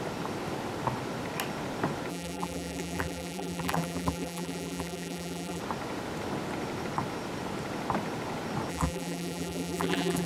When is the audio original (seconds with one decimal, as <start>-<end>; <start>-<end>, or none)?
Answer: 0.0-2.1; 5.6-8.7